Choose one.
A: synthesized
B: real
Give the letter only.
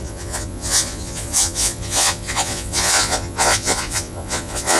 A